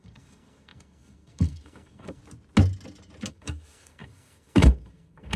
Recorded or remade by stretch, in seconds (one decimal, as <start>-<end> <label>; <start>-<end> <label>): 0.0-2.2 remade; 2.2-3.3 recorded; 3.3-5.4 remade